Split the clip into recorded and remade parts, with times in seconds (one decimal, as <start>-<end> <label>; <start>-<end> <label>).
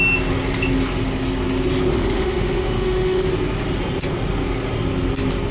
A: 0.0-1.9 recorded; 1.9-3.3 remade; 3.3-5.5 recorded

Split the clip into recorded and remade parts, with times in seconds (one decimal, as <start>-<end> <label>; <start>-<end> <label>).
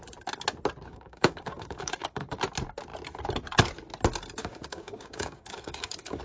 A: 0.0-0.9 recorded; 0.9-2.4 remade; 2.4-4.4 recorded; 4.4-6.2 remade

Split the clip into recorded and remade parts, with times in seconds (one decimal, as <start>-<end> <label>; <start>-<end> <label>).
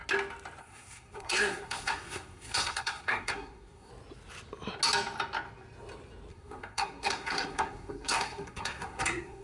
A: 0.0-0.6 recorded; 0.6-3.9 remade; 3.9-6.3 recorded; 6.3-9.4 remade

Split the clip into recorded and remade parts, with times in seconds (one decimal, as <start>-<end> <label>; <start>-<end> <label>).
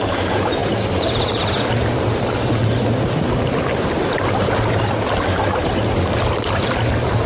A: 0.0-7.3 recorded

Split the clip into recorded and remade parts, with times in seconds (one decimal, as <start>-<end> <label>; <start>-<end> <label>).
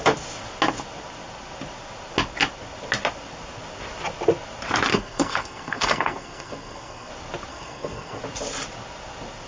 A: 0.0-4.9 recorded; 4.9-7.1 remade; 7.1-7.5 recorded; 7.5-8.2 remade; 8.2-9.5 recorded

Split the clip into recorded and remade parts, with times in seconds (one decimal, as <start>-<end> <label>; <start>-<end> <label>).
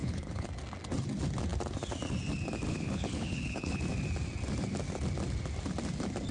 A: 0.0-0.5 remade; 0.5-2.7 recorded; 2.7-3.8 remade; 3.8-6.3 recorded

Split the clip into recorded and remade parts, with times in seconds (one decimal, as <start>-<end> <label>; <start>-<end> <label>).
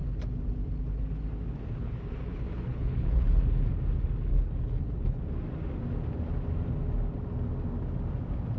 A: 0.0-1.8 recorded; 1.8-3.4 remade; 3.4-4.3 recorded; 4.3-5.2 remade; 5.2-8.6 recorded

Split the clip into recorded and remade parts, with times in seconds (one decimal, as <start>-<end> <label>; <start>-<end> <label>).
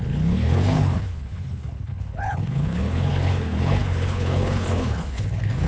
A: 0.0-5.7 remade